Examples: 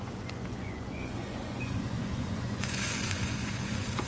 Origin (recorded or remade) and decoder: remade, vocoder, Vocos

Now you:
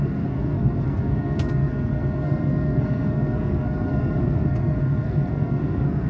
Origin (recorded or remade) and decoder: remade, codec, SNAC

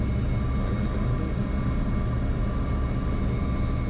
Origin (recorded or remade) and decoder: recorded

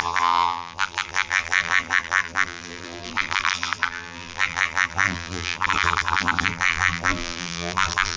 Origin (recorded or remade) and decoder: remade, vocoder, BigVGAN v2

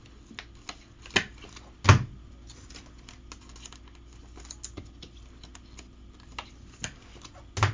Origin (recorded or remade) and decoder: recorded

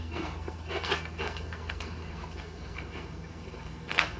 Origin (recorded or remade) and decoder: remade, codec, SNAC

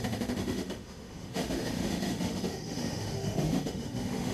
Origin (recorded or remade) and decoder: remade, autoencoder, DAC-VAE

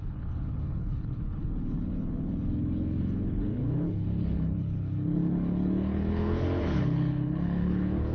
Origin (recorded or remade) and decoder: remade, codec, HILCodec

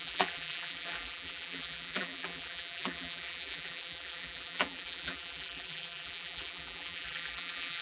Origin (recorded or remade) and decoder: remade, vocoder, BigVGAN v2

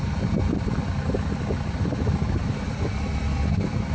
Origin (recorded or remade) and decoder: recorded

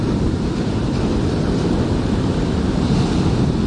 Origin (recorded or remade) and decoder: recorded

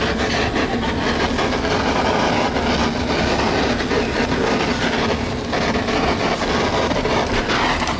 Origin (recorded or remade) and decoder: recorded